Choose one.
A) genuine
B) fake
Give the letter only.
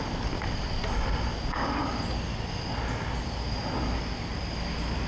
A